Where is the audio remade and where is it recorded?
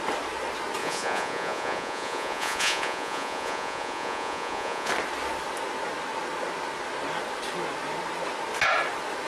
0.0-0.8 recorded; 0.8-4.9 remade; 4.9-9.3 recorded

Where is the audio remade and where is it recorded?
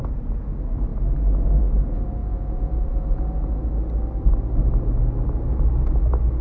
0.0-2.2 recorded; 2.2-3.7 remade; 3.7-6.4 recorded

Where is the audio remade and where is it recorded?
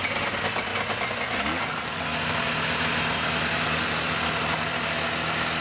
0.0-5.6 recorded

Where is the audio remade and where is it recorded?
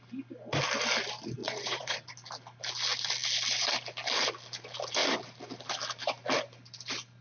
0.0-1.4 recorded; 1.4-2.1 remade; 2.1-7.2 recorded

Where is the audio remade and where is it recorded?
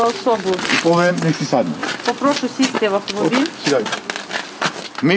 0.0-5.2 recorded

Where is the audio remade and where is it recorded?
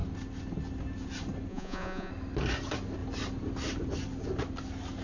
0.0-1.5 recorded; 1.5-2.1 remade; 2.1-5.0 recorded